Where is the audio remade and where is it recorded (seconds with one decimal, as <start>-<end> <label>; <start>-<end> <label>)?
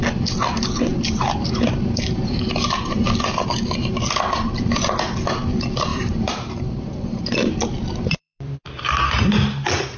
0.0-0.9 recorded; 0.9-3.2 remade; 3.2-5.9 recorded; 5.9-10.0 remade